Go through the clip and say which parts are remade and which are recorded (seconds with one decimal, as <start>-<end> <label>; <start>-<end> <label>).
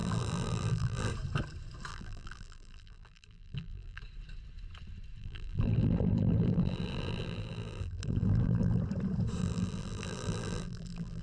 0.0-1.1 remade; 1.1-1.9 recorded; 1.9-4.0 remade; 4.0-5.2 recorded; 5.2-8.8 remade; 8.8-9.4 recorded; 9.4-11.2 remade